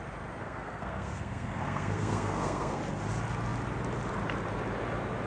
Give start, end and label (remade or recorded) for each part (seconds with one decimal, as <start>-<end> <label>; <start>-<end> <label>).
0.0-0.4 recorded; 0.4-2.8 remade; 2.8-5.3 recorded